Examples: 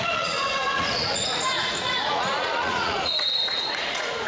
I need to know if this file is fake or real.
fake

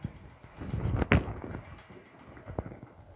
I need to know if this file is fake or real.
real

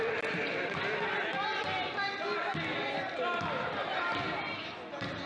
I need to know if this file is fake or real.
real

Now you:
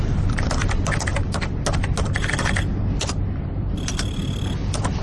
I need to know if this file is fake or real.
real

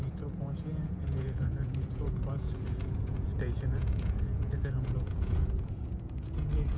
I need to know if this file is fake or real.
fake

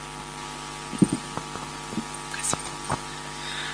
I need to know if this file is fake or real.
real